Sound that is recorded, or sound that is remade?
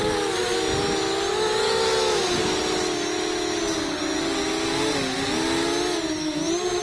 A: recorded